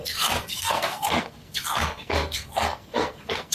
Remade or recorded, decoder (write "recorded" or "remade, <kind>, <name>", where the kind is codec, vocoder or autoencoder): remade, codec, SNAC